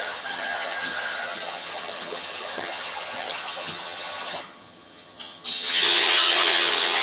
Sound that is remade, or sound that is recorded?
remade